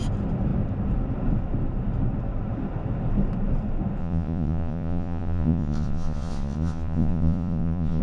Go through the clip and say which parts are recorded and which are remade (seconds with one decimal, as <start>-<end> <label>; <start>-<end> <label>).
0.0-4.0 recorded; 4.0-8.0 remade